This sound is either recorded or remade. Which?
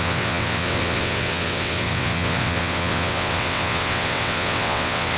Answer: remade